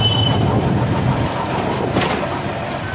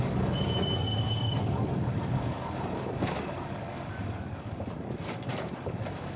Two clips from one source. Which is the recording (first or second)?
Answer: first